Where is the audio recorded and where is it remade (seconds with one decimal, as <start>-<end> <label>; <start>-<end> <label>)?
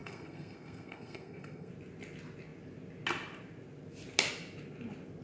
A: 0.0-1.7 remade; 1.7-5.2 recorded